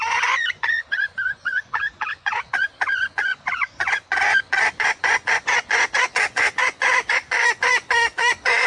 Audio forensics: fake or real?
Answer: fake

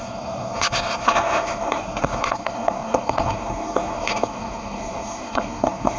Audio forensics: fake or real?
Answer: fake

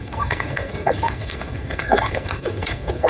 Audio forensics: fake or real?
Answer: fake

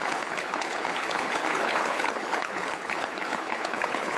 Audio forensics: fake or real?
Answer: fake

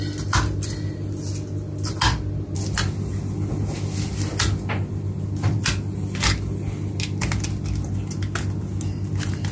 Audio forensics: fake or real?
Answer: real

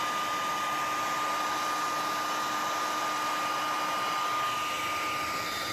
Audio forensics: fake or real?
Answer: real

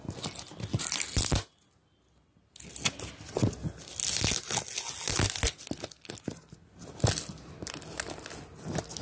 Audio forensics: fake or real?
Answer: real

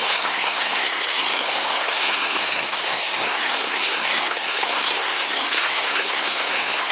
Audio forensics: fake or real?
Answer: fake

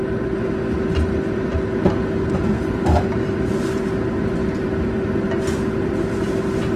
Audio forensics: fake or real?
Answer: real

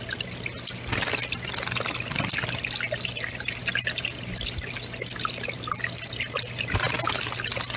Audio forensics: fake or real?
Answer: real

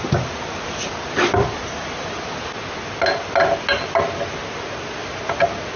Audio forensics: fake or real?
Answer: real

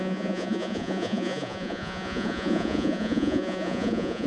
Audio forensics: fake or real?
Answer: fake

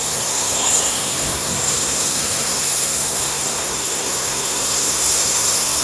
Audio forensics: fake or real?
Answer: fake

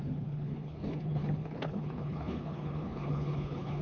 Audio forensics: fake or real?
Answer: fake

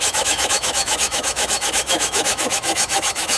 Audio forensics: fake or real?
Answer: fake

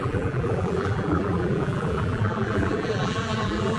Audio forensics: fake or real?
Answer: fake